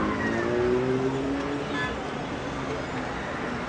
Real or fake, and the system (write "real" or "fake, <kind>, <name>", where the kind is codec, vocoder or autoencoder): real